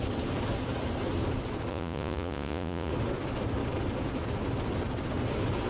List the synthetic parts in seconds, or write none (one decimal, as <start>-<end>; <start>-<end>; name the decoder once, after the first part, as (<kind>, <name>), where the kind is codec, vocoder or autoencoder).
1.7-2.9 (vocoder, Vocos)